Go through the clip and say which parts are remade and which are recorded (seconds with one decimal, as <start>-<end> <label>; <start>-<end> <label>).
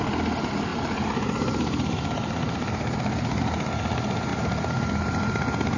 0.0-0.7 recorded; 0.7-3.4 remade; 3.4-4.3 recorded; 4.3-5.2 remade; 5.2-5.8 recorded